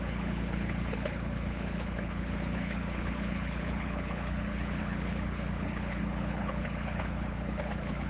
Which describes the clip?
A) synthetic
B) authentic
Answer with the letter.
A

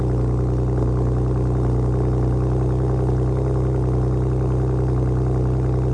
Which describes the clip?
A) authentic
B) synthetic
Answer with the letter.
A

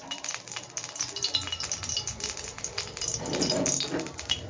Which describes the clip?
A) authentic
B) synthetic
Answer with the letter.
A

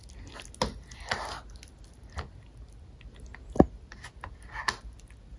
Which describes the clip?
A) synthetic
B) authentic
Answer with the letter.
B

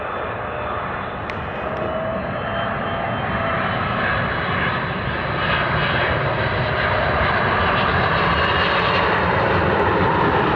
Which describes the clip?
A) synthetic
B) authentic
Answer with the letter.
A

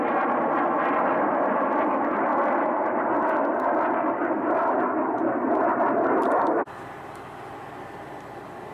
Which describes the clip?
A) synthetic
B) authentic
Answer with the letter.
B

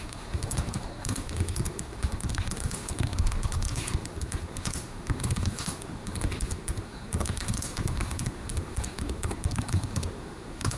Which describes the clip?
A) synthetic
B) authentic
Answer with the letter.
A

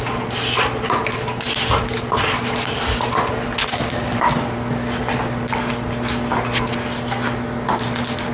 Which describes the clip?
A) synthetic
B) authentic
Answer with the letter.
B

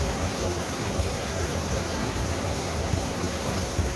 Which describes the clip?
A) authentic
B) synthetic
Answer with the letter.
B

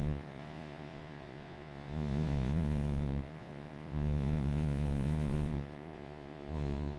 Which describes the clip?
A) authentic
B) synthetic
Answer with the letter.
B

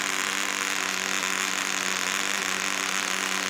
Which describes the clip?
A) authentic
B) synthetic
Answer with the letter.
A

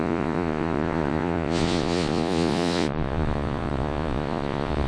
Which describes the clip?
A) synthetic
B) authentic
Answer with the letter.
A